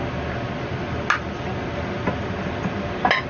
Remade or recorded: recorded